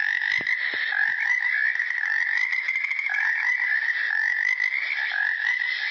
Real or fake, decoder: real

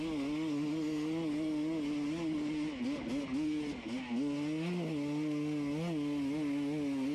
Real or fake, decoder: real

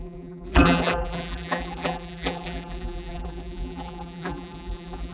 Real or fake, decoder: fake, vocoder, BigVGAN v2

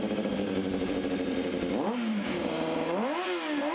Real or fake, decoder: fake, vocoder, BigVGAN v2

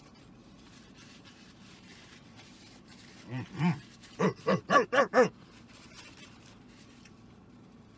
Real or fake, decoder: fake, vocoder, BigVGAN v2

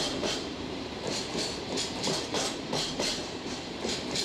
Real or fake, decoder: fake, vocoder, BigVGAN v2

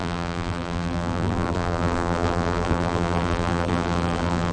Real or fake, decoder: fake, vocoder, BigVGAN v2